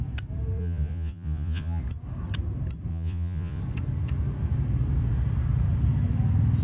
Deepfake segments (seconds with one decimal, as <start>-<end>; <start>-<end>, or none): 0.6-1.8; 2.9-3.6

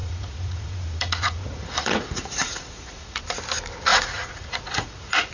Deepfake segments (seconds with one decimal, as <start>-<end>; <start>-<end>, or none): 0.0-3.2; 3.9-5.3

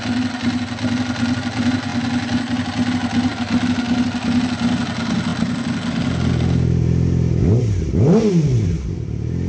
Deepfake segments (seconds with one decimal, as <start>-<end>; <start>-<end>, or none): none

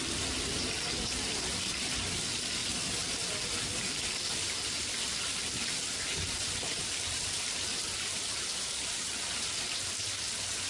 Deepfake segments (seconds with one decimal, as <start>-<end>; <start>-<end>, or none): none

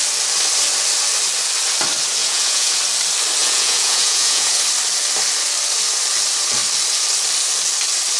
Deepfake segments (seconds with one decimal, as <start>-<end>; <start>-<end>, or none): 2.2-2.8; 3.4-4.6

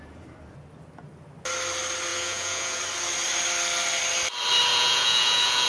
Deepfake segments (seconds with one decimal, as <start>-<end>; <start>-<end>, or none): 2.1-2.8; 4.7-5.7

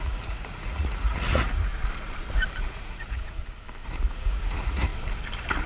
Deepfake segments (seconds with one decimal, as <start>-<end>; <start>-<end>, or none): 0.0-1.7; 2.6-3.4; 4.1-4.9